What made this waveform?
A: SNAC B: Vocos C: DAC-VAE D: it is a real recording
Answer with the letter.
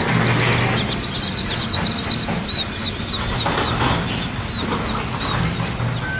D